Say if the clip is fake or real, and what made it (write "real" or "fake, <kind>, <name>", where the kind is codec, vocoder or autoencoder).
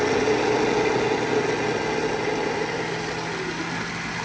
real